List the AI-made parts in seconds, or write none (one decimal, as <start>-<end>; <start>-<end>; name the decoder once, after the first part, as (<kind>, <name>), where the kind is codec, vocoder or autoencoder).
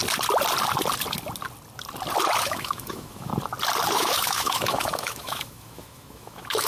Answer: 2.4-3.3 (autoencoder, DAC-VAE); 3.9-6.7